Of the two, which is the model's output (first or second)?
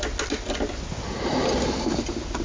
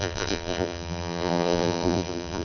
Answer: second